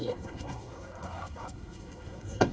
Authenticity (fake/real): fake